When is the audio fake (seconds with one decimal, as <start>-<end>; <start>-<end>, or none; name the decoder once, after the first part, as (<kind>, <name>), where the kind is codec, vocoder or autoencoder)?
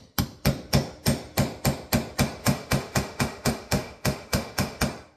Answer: 2.4-4.8 (autoencoder, DAC-VAE)